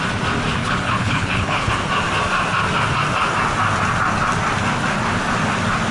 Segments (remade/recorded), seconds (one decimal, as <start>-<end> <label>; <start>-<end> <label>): 0.0-0.6 recorded; 0.6-1.7 remade; 1.7-5.9 recorded